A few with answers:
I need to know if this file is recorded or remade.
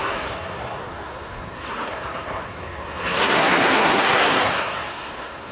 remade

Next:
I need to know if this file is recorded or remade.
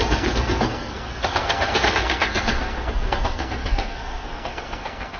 remade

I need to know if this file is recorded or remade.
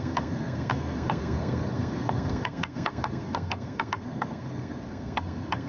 remade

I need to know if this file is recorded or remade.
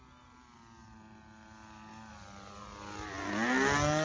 recorded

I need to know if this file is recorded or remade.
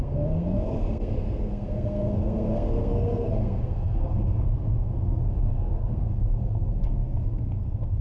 remade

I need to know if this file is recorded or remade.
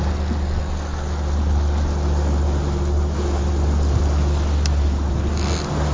recorded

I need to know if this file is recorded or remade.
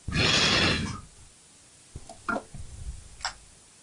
recorded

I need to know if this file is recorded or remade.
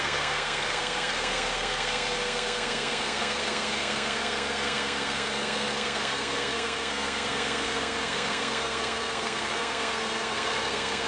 remade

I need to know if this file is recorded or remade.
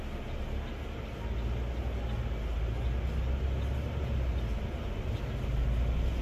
recorded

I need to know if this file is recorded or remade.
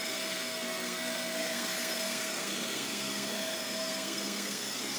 remade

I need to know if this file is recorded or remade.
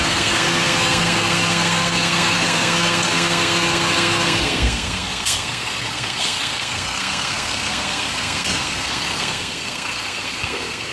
remade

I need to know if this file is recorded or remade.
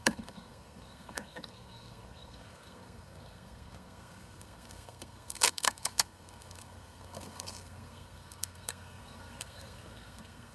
remade